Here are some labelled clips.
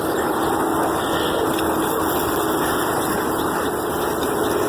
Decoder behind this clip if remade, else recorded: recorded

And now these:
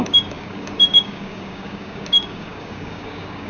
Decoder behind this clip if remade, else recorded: remade, codec, DAC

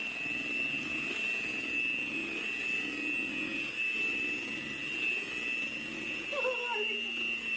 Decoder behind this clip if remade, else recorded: recorded